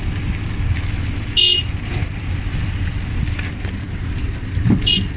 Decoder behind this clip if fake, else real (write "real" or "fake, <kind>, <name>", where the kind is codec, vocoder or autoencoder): real